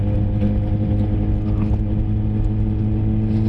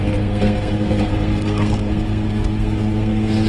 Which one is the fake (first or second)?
second